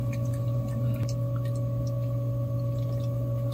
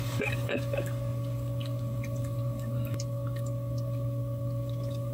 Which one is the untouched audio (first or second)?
first